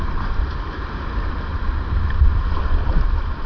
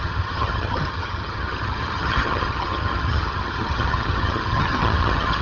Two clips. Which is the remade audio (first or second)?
second